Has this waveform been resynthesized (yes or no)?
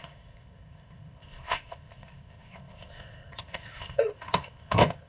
yes